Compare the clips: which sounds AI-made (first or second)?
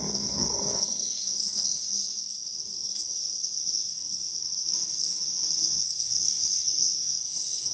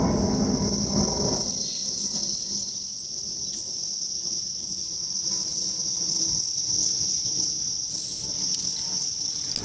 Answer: first